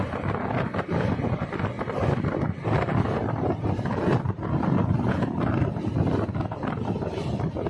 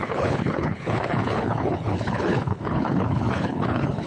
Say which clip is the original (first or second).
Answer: first